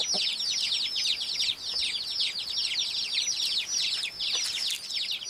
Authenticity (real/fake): real